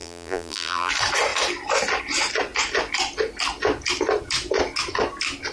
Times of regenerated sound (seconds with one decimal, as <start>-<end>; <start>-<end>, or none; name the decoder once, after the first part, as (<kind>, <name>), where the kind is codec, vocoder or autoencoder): 0.0-0.9 (vocoder, BigVGAN v2)